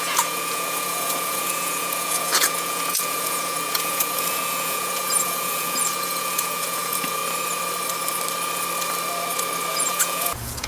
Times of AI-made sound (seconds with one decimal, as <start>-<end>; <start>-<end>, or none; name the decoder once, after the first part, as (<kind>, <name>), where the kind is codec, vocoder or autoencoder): 0.0-7.2 (vocoder, Vocos); 9.7-10.7